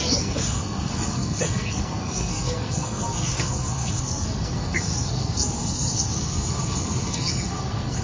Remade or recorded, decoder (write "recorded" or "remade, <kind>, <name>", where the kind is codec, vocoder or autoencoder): remade, codec, SNAC